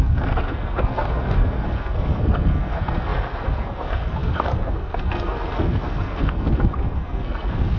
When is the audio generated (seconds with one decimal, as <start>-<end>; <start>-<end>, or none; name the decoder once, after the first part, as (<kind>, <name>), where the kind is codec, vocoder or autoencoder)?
0.0-7.8 (codec, SNAC)

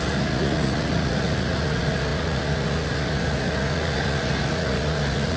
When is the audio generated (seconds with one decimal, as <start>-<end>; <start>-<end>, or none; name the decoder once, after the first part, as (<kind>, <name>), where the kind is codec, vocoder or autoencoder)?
0.0-5.4 (vocoder, Vocos)